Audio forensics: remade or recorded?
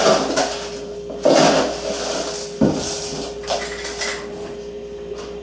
recorded